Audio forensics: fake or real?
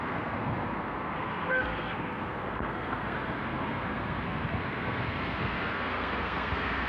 fake